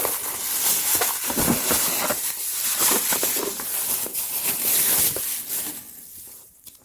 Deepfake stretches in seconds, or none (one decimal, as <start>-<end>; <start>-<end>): 2.2-5.3; 6.2-6.8